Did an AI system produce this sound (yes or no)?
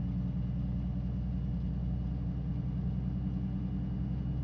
no